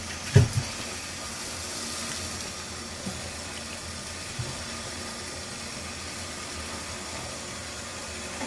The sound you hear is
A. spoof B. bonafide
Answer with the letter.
B